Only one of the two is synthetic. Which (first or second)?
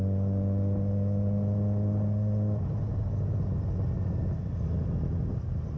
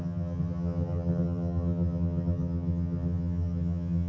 second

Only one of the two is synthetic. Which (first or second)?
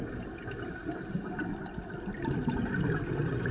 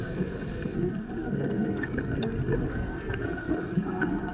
second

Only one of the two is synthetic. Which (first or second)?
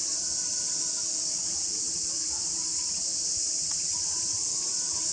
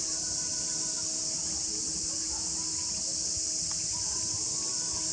first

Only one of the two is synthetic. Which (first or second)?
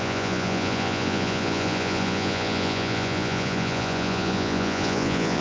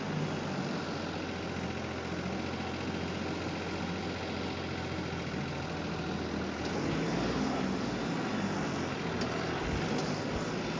first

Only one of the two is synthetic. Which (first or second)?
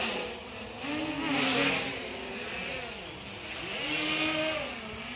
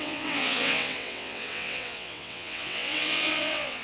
second